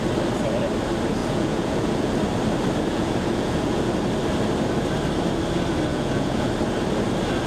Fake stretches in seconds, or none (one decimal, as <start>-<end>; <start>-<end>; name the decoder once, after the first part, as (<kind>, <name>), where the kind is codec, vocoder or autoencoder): 1.2-2.1 (vocoder, Vocos); 2.9-3.9; 5.9-6.5